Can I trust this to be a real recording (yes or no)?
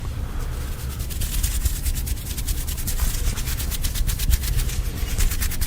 yes